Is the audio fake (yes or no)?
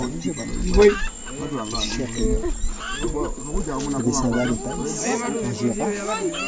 no